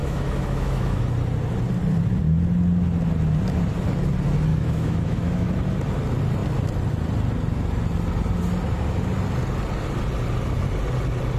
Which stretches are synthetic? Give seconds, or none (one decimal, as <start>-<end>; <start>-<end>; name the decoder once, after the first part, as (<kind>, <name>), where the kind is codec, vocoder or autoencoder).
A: 0.0-1.0 (autoencoder, DAC-VAE); 4.5-5.5